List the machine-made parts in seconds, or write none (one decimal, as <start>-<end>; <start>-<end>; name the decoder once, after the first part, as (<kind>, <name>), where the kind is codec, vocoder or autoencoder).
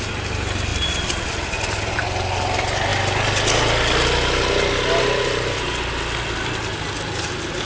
none